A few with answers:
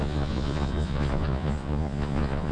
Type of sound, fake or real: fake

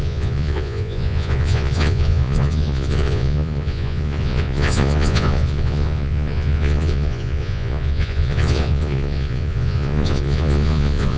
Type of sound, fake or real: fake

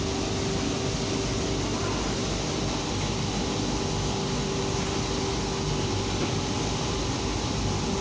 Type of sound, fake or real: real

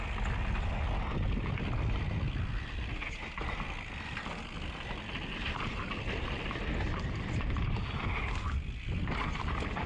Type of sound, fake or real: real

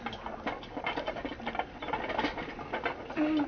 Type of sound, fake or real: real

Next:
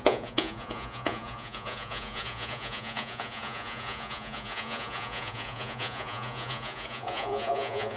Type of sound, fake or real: fake